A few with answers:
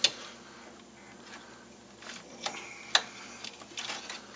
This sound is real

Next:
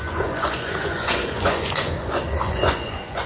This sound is fake